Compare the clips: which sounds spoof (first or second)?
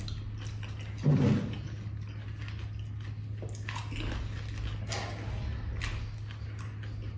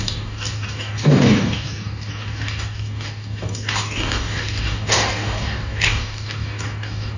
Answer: second